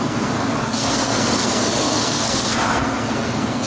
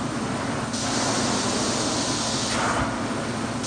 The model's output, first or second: first